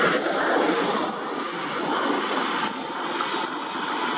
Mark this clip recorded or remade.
recorded